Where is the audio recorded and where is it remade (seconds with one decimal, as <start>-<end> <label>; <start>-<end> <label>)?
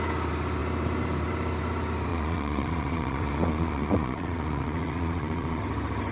0.0-2.1 recorded; 2.1-5.6 remade; 5.6-6.1 recorded